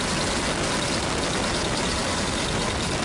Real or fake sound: real